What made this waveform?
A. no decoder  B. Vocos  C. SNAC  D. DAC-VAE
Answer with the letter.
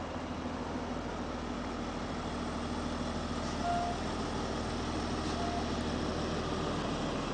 A